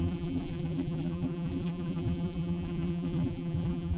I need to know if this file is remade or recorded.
remade